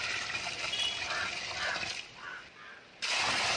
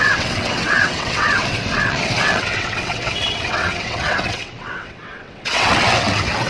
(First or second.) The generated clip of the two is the second